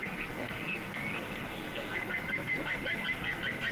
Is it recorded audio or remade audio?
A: remade